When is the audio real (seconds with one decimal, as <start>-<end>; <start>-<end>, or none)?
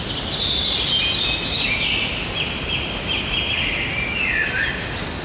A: 0.0-5.2